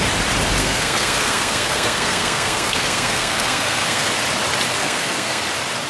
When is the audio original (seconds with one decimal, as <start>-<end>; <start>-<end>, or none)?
0.0-0.6; 4.1-4.8; 5.4-5.9